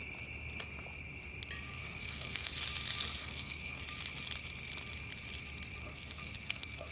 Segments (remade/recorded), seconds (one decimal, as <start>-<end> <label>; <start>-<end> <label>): 0.0-1.8 recorded; 1.8-2.5 remade; 2.5-3.2 recorded; 3.2-3.8 remade; 3.8-5.8 recorded; 5.8-6.9 remade